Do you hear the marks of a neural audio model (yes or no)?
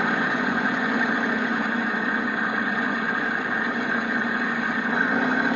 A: yes